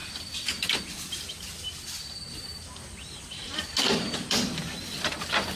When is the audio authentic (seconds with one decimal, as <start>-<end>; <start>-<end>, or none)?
0.8-1.6; 5.0-5.6